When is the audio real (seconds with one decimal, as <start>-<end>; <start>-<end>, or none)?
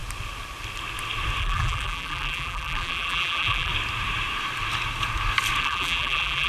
0.0-1.4; 3.7-5.6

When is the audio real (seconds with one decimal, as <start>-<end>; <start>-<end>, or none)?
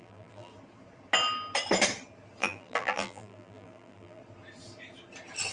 0.5-2.4; 4.2-5.5